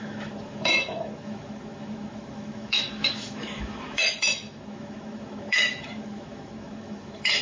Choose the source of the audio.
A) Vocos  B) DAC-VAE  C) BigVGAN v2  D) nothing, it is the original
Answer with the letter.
B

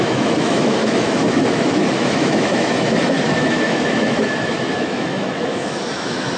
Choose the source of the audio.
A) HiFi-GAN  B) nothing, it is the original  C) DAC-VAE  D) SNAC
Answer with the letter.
C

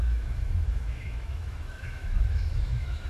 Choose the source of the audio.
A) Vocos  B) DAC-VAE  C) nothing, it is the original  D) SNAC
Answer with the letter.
B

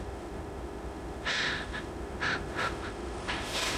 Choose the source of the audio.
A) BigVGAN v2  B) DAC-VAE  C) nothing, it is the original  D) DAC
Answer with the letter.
B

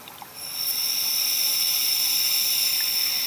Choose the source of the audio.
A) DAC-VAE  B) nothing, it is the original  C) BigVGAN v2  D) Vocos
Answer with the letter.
B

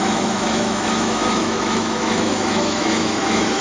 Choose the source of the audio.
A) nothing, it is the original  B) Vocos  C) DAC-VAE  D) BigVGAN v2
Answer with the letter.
C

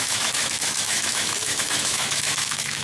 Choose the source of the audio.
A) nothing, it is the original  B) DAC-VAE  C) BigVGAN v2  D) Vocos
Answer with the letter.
B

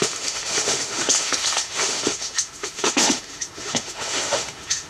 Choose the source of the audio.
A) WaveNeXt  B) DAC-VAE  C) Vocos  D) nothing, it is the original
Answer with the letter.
B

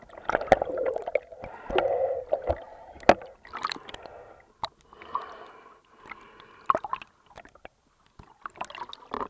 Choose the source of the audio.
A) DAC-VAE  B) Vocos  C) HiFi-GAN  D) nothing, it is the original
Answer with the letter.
D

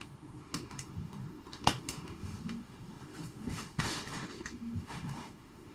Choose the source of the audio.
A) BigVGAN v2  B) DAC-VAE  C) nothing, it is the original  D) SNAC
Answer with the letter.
B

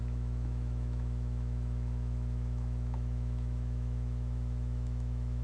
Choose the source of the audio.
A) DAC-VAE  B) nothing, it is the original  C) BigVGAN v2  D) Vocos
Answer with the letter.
A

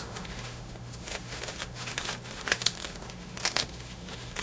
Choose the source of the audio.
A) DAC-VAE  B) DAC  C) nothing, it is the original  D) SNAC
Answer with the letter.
A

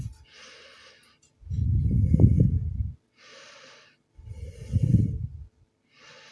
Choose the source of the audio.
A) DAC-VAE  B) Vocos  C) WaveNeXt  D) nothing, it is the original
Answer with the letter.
D